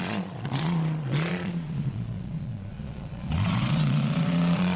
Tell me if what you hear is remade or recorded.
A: remade